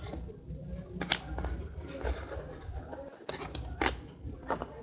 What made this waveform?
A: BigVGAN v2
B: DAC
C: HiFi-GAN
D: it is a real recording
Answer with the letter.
D